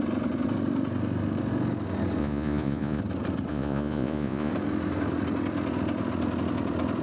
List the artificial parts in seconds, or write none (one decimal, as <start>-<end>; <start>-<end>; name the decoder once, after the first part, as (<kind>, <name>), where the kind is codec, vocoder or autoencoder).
2.2-3.0 (vocoder, Vocos); 3.5-4.5